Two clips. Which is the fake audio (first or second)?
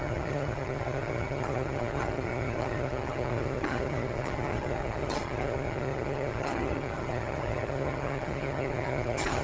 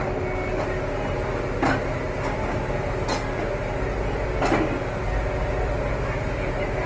first